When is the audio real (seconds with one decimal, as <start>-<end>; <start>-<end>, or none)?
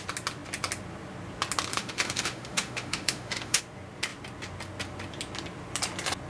0.0-1.7; 3.6-6.3